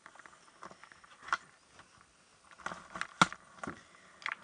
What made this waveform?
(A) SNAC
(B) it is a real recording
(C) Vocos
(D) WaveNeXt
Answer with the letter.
B